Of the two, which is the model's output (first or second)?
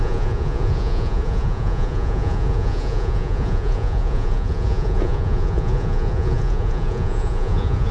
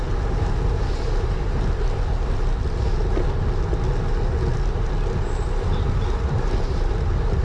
first